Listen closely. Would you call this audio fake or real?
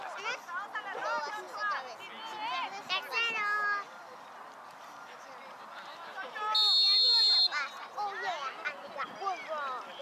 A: real